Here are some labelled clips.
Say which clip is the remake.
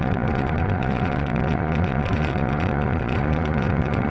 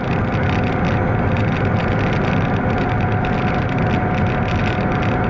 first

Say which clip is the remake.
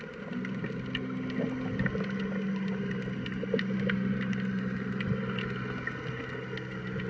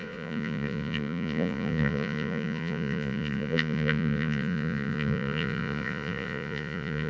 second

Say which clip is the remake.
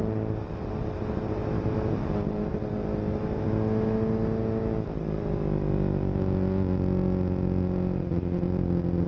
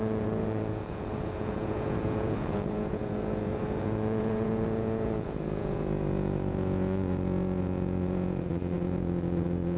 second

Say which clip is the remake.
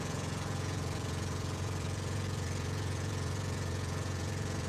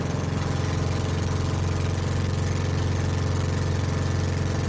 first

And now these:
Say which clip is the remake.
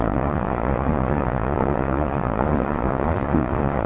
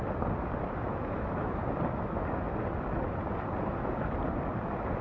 first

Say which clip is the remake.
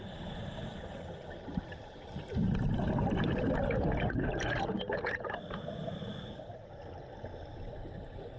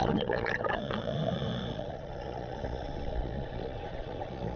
second